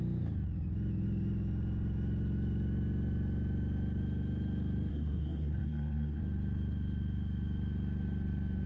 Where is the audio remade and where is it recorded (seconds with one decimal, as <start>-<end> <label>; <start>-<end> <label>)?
0.0-4.9 recorded; 4.9-6.2 remade; 6.2-8.7 recorded